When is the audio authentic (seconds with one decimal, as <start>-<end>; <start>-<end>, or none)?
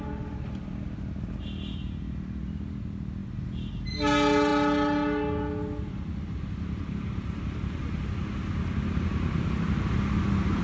0.0-10.6